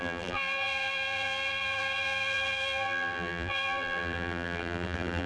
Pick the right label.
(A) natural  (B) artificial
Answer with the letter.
B